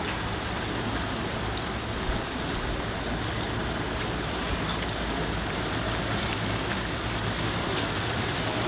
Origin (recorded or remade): recorded